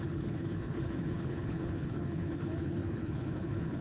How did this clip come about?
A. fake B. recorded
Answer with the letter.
A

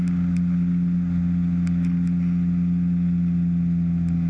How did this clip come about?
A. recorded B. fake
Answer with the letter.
A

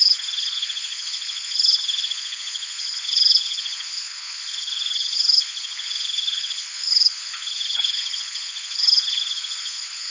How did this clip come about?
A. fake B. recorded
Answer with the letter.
A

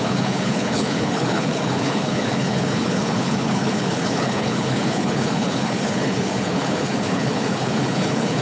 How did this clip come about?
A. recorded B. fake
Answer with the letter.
B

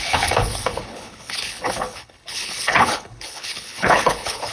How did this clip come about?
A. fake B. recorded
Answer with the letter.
A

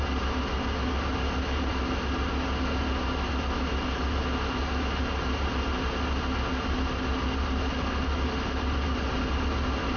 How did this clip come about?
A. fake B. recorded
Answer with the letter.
B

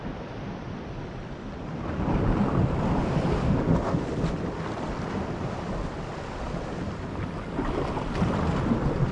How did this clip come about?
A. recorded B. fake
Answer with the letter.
A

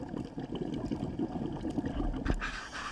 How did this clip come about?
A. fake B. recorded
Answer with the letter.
B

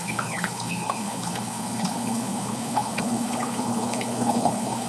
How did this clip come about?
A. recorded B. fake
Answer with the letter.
B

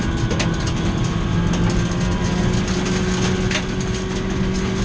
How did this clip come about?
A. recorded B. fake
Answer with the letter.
A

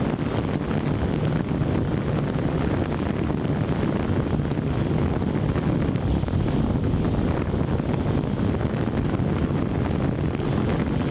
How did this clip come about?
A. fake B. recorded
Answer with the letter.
B